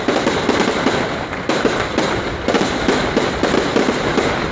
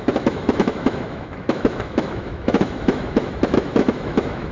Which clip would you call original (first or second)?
first